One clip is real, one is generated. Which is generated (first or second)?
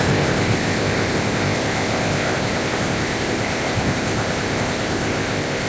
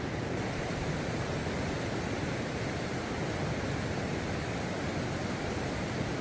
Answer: first